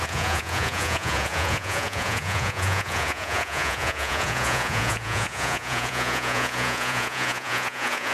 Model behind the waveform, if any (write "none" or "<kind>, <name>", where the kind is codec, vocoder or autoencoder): vocoder, Vocos